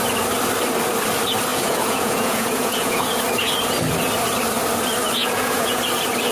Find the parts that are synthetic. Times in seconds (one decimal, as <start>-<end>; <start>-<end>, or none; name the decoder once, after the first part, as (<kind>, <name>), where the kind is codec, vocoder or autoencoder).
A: 1.5-3.2 (vocoder, Vocos); 5.2-5.8